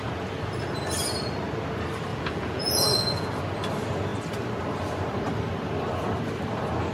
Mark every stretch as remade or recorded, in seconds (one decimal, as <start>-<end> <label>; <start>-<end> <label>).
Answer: 0.0-2.1 recorded; 2.1-3.4 remade; 3.4-6.9 recorded